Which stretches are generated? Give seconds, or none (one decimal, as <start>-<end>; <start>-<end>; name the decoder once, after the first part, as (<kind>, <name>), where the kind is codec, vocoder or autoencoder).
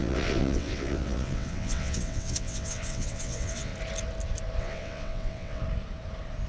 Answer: 0.0-3.7 (vocoder, WaveNeXt); 4.6-5.6